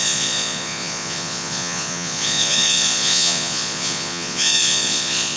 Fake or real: fake